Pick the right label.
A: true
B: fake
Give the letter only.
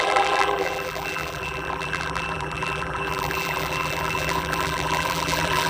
B